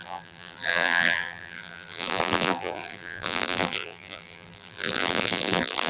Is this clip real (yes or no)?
no